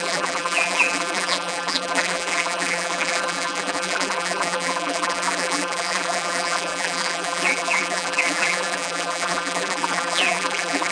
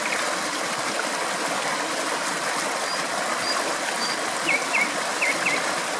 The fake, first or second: first